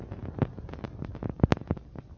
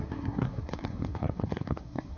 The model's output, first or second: second